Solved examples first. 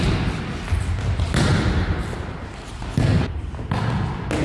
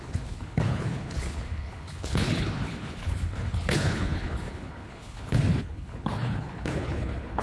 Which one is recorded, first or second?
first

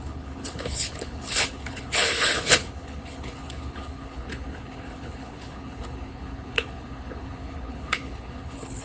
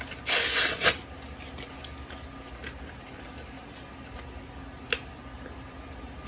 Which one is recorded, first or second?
second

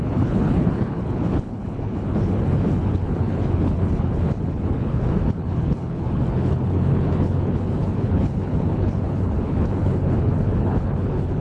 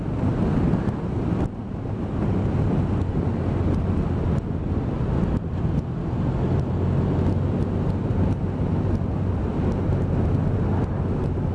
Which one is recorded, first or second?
second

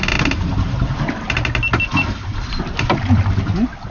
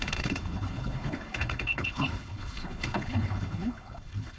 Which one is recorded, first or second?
first